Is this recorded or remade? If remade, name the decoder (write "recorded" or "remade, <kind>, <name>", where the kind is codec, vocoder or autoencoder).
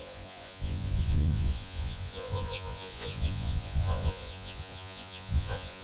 remade, vocoder, Vocos